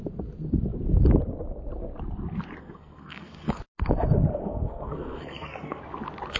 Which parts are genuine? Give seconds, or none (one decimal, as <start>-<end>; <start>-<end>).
0.0-2.6; 3.6-4.3; 5.8-6.4